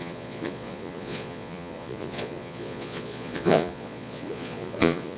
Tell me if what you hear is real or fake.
fake